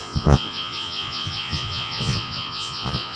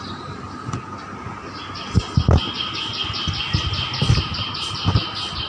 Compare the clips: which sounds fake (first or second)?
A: first